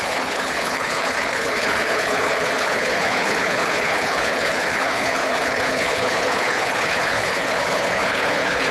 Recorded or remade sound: remade